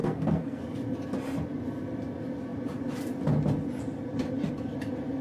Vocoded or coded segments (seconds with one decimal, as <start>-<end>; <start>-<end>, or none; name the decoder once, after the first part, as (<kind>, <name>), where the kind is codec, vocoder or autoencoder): 0.0-0.6 (codec, SNAC)